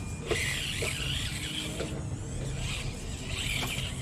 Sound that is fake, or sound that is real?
real